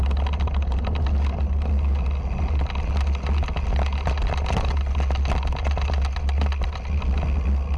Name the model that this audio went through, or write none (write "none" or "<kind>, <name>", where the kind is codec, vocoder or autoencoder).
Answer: none